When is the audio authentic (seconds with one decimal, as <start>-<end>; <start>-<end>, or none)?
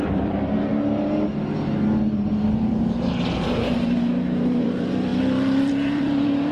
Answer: 0.7-4.6; 5.1-5.7